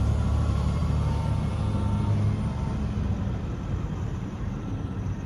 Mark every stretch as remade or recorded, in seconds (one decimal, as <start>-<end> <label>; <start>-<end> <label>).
0.0-0.8 remade; 0.8-4.0 recorded; 4.0-5.3 remade